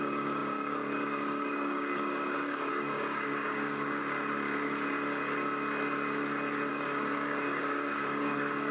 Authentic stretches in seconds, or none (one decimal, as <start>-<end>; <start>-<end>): 4.0-6.7